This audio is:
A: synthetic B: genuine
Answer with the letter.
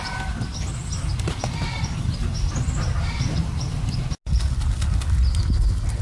B